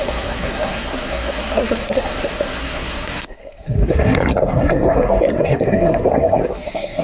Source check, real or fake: fake